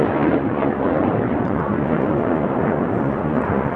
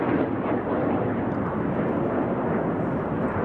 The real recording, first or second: second